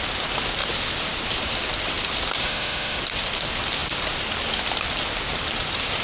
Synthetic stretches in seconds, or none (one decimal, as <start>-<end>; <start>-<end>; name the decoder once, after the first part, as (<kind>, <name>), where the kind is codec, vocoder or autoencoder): 2.4-3.0 (autoencoder, DAC-VAE)